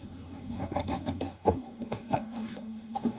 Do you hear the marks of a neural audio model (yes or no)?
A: yes